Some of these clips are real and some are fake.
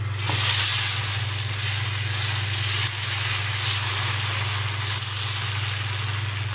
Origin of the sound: real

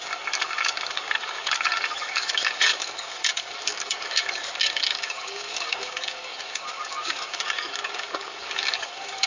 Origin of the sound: fake